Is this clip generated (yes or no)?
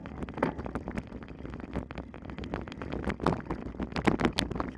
no